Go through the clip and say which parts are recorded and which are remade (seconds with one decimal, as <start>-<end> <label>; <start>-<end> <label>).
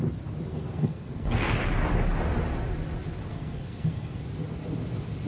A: 0.0-0.5 recorded; 0.5-1.5 remade; 1.5-3.3 recorded; 3.3-4.2 remade; 4.2-5.3 recorded